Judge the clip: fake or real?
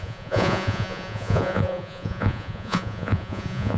fake